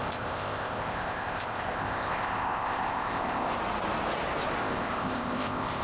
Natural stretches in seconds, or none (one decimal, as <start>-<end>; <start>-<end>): 3.5-4.6